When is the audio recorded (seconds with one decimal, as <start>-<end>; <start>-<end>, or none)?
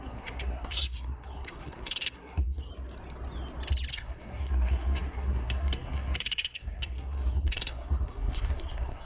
2.7-3.9